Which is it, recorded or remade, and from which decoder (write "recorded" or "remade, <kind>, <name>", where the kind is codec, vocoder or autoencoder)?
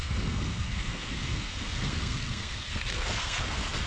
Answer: remade, codec, SNAC